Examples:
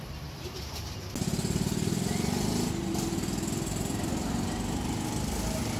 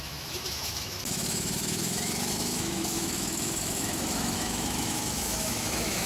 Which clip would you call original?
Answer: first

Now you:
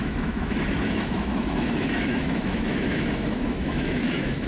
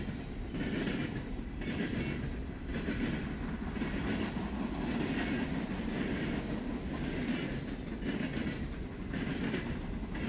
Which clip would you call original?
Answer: second